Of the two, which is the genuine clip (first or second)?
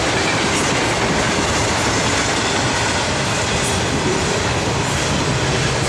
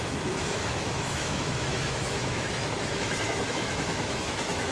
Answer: first